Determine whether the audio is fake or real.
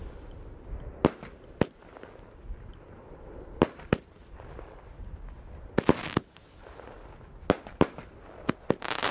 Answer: real